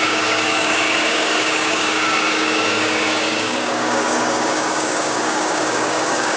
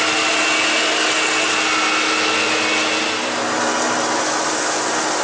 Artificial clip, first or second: first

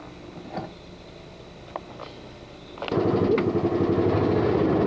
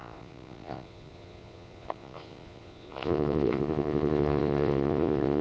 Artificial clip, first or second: second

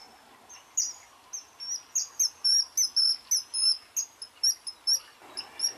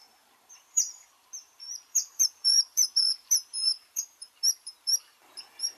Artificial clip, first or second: second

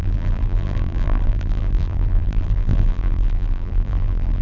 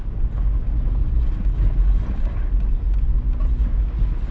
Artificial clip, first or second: first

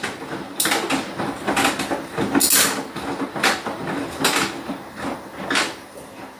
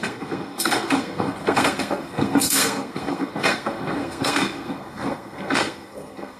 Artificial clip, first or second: second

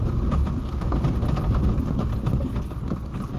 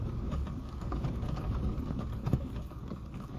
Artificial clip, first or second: second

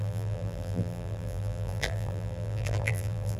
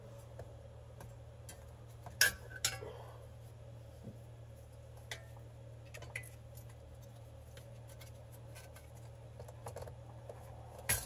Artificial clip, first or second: first